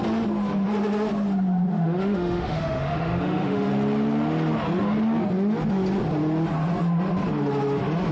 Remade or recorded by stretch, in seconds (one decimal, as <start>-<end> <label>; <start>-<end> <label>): 0.0-1.7 recorded; 1.7-3.7 remade; 3.7-8.1 recorded